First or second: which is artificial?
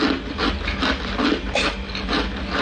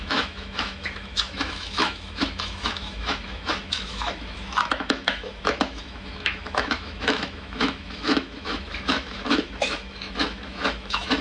second